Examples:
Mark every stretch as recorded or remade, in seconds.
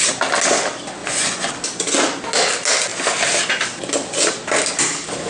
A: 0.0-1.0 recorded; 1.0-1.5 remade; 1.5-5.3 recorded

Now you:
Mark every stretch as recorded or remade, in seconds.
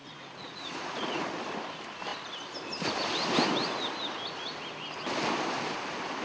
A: 0.0-1.3 remade; 1.3-6.2 recorded